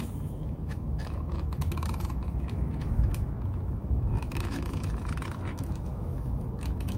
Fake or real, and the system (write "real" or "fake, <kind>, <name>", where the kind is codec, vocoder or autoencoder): fake, autoencoder, DAC-VAE